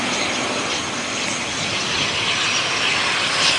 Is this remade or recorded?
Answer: recorded